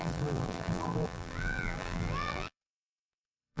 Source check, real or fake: fake